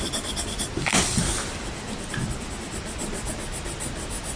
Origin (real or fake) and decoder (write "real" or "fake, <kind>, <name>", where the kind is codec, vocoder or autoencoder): real